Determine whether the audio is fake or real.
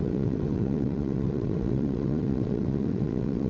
fake